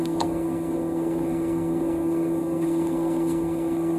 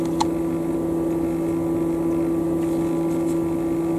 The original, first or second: second